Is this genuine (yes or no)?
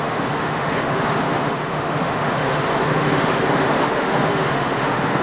no